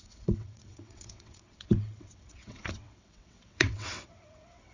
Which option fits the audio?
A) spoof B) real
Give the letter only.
A